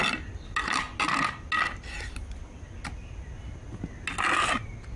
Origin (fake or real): real